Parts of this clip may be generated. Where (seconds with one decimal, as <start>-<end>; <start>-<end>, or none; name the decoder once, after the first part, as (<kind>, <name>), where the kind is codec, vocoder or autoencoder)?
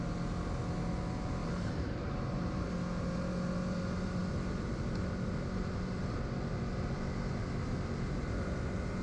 1.4-2.7 (vocoder, BigVGAN v2)